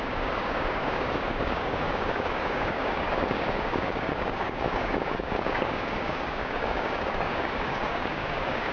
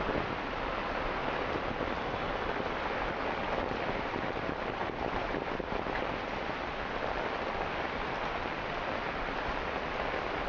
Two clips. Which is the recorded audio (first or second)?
second